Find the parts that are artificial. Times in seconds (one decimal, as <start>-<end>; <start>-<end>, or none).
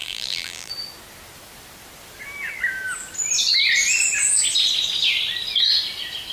0.0-0.7